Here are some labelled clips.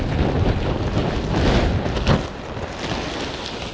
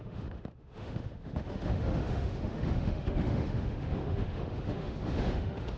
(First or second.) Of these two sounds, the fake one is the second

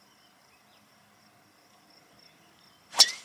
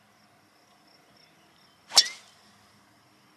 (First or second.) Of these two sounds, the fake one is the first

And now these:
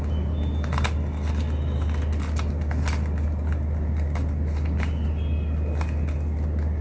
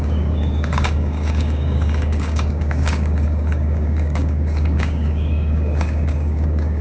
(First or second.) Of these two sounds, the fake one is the second